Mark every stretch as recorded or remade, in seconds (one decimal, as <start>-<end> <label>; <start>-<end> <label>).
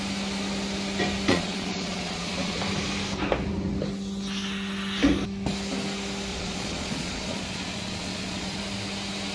0.0-1.3 recorded; 1.3-2.6 remade; 2.6-6.3 recorded; 6.3-8.6 remade; 8.6-9.3 recorded